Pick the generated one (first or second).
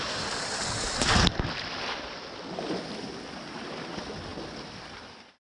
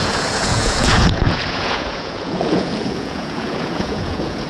second